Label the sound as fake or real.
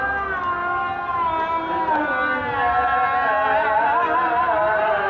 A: real